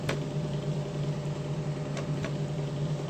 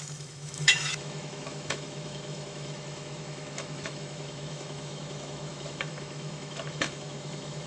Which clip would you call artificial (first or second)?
second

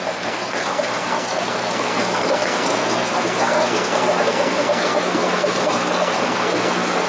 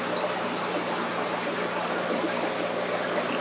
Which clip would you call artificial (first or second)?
first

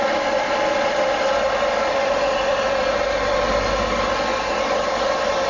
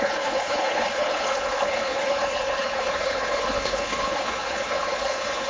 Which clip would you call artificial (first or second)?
second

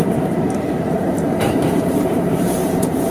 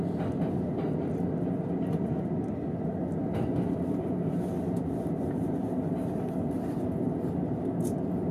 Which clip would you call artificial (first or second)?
first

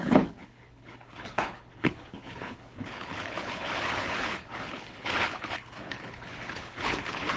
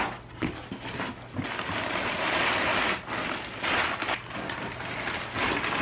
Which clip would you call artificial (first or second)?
first